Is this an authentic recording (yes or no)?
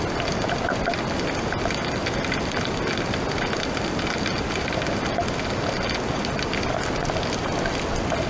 yes